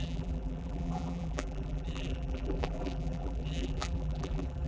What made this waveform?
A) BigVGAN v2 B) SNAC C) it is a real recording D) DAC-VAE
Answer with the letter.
A